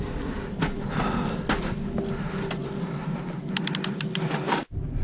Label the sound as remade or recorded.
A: recorded